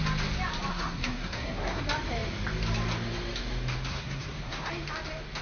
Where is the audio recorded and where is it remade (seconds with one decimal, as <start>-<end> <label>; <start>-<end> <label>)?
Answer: 0.0-0.7 recorded; 0.7-1.8 remade; 1.8-3.9 recorded; 3.9-4.7 remade; 4.7-5.4 recorded